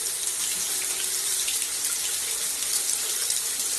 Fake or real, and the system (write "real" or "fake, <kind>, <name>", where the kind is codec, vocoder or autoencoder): real